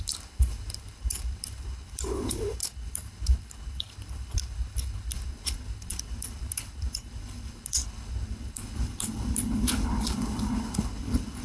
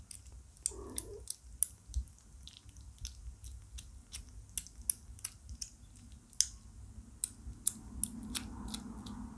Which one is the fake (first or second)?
first